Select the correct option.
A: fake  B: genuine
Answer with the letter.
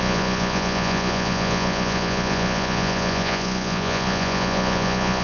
A